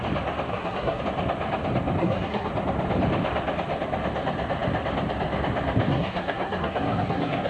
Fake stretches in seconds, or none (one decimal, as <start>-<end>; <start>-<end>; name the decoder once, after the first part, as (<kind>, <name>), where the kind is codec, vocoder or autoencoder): 0.5-1.0 (codec, SNAC); 2.0-2.5; 5.9-7.5